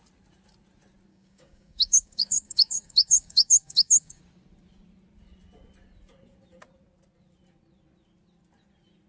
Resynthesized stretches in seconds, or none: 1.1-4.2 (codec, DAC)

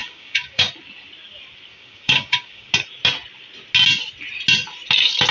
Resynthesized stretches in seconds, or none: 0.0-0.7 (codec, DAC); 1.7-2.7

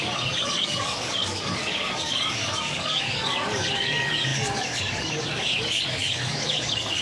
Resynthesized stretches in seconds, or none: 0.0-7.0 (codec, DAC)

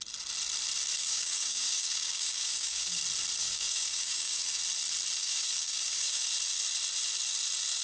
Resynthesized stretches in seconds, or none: 1.0-3.0 (codec, DAC); 3.4-4.6; 5.2-6.3

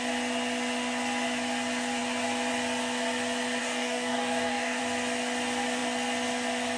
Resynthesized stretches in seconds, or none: 3.6-4.8 (codec, DAC)

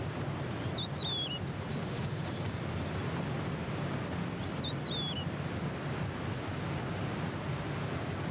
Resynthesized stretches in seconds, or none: 1.7-2.6 (codec, DAC)

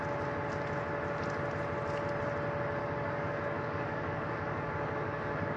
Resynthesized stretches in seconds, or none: 2.8-5.6 (codec, DAC)

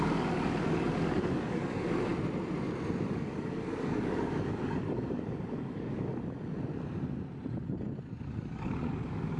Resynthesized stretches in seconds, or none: 0.0-2.1 (codec, DAC); 3.0-6.1; 8.2-9.4